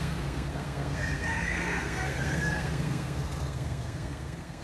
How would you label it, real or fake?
fake